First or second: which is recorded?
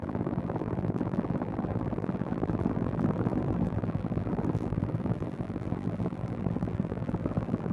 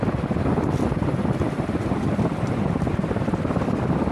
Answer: second